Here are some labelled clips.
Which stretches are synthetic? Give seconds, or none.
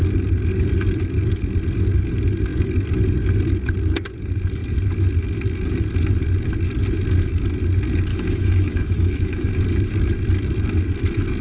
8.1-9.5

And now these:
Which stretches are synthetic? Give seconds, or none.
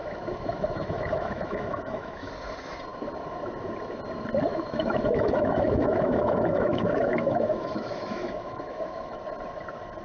0.0-2.3; 4.5-9.2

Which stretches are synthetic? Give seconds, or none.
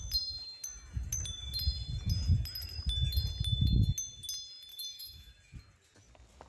4.7-5.3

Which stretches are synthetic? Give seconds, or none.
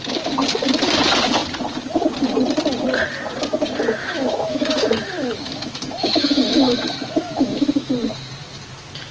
4.0-7.9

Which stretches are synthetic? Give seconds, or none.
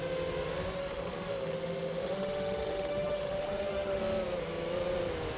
0.8-4.0